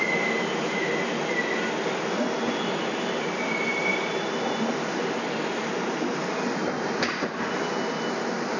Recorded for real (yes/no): yes